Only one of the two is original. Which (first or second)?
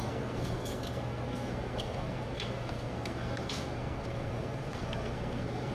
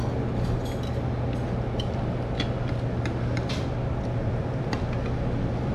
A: second